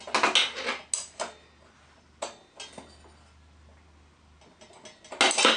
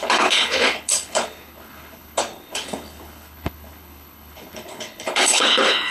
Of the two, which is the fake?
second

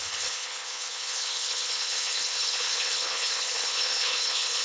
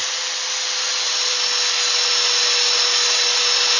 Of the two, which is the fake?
first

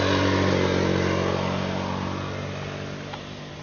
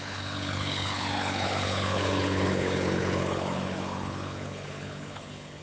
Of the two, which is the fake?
second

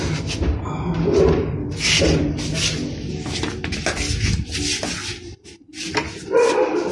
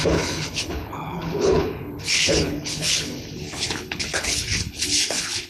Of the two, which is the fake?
second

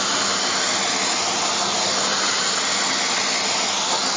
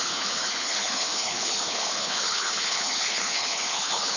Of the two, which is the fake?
second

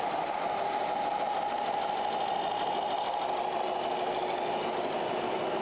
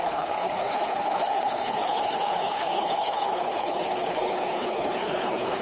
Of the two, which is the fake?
second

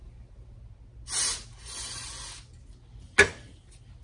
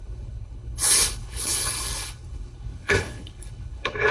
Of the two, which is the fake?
second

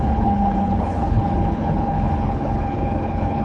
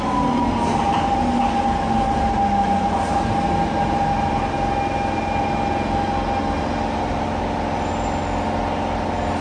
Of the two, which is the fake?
first